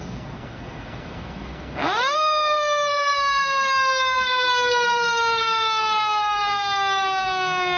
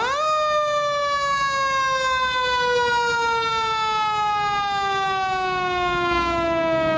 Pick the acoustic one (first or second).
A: second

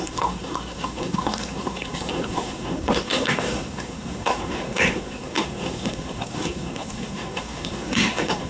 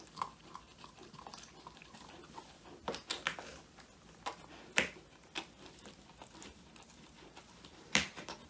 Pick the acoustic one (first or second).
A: second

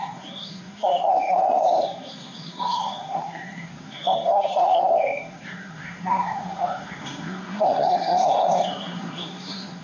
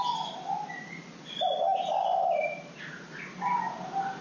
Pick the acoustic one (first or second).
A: second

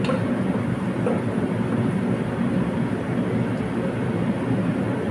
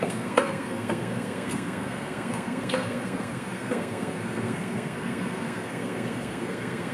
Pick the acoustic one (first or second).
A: first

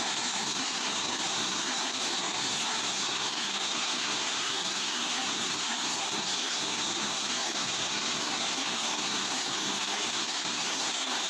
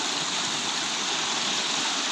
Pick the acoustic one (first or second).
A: second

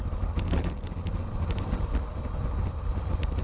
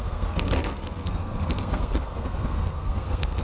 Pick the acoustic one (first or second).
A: first